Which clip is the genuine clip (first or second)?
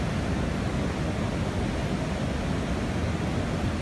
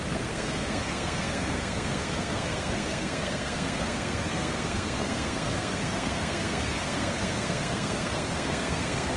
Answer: first